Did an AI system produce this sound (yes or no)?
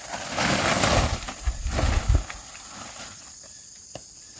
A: yes